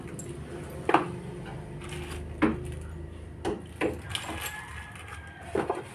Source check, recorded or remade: recorded